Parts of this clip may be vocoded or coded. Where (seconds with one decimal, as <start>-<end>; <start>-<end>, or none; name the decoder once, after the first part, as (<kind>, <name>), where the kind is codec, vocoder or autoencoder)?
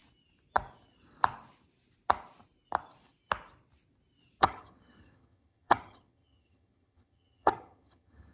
4.4-8.3 (vocoder, HiFi-GAN)